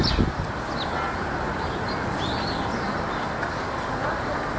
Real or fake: real